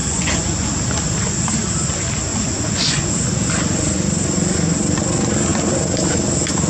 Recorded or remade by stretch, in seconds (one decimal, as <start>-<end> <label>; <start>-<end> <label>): 0.0-0.7 remade; 0.7-2.3 recorded; 2.3-3.1 remade; 3.1-6.7 recorded